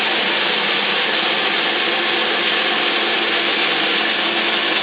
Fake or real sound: real